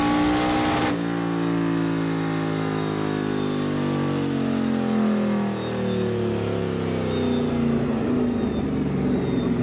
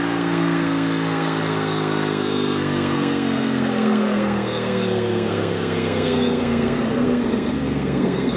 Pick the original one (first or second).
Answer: first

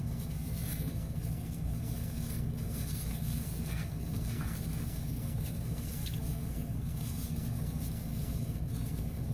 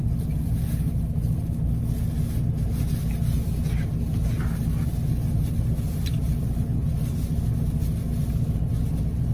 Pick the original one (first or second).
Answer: second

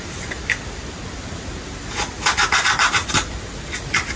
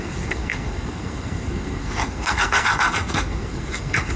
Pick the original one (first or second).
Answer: first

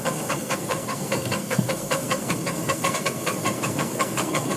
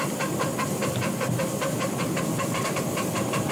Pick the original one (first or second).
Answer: second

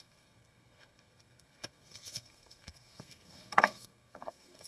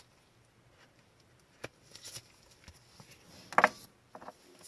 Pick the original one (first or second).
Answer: second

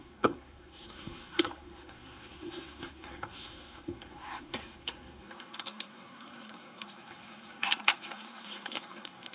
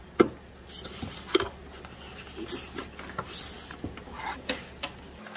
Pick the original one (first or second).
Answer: second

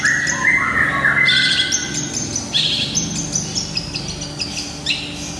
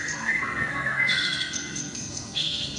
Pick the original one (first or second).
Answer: first